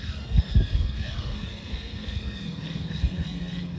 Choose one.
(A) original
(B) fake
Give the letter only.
B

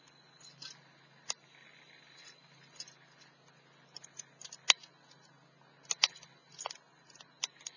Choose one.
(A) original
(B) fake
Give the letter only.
A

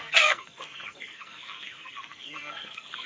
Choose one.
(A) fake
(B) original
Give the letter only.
A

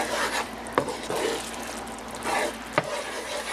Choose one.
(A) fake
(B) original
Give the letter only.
A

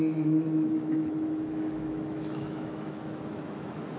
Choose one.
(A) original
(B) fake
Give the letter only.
B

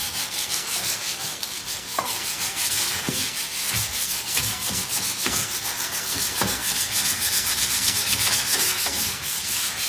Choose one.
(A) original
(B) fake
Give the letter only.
B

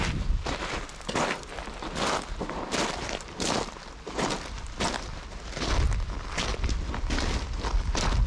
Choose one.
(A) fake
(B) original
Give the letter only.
B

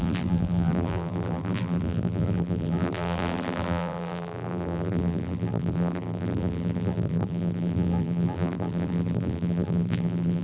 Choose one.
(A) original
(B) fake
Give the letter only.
B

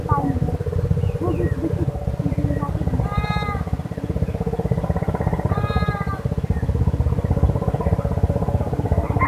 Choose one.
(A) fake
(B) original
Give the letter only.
B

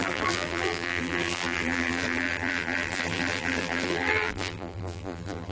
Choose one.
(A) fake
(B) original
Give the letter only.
A